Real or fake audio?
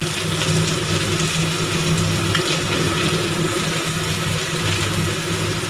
real